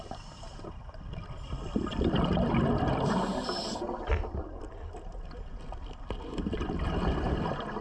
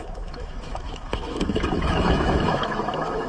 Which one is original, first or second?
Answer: first